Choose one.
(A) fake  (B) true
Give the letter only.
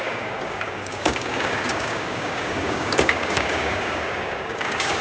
A